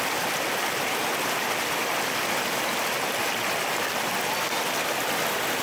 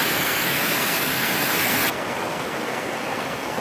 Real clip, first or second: first